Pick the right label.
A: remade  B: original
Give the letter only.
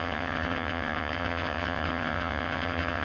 A